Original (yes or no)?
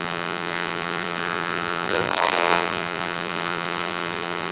no